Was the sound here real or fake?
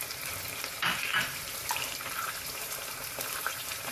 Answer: fake